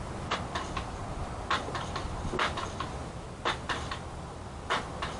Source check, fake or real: real